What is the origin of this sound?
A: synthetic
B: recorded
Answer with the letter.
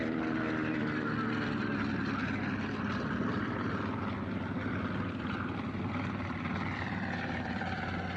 A